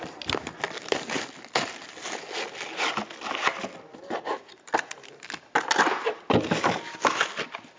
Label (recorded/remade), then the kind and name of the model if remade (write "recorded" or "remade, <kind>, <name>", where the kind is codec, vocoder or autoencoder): recorded